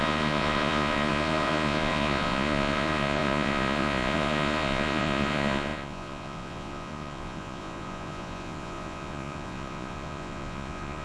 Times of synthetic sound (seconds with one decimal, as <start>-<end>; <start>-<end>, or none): 0.0-11.0